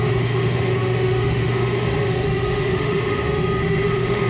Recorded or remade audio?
remade